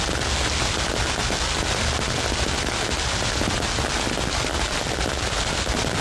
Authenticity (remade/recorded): recorded